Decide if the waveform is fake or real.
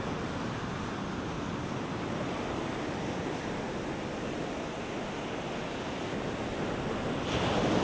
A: real